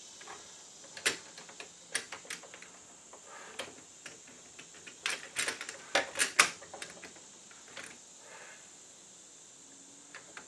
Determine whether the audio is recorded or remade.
recorded